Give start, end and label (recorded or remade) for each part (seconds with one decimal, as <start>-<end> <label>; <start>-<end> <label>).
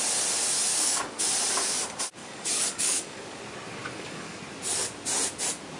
0.0-0.7 recorded; 0.7-1.2 remade; 1.2-2.2 recorded; 2.2-3.4 remade; 3.4-3.8 recorded; 3.8-4.4 remade; 4.4-5.8 recorded